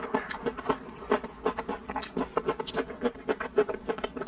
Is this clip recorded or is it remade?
recorded